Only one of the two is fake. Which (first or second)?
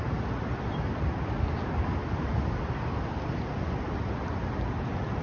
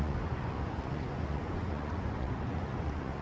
second